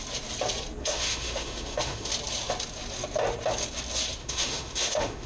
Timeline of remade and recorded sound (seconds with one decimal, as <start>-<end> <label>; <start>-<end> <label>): 0.0-0.8 recorded; 0.8-2.1 remade; 2.1-4.2 recorded; 4.2-5.3 remade